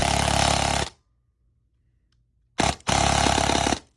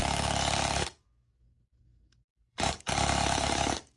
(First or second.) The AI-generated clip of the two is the second